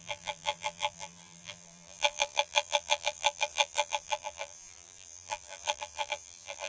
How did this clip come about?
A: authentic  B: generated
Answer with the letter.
B